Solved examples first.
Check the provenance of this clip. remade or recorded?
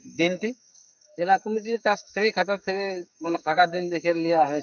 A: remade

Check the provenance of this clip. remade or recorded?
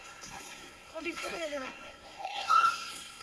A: remade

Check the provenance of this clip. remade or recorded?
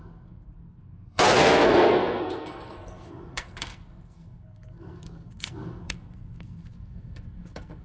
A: remade